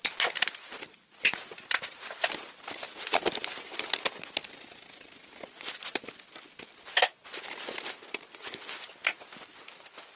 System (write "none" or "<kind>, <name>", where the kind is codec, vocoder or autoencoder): none